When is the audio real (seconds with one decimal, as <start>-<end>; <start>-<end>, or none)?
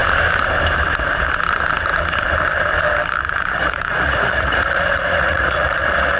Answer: 0.0-3.3